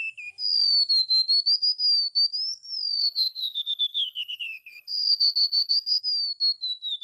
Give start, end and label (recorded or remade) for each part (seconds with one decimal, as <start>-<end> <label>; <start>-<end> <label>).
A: 0.0-3.0 recorded; 3.0-6.0 remade; 6.0-7.0 recorded